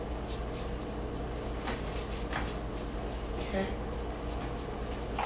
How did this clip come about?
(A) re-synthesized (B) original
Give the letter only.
B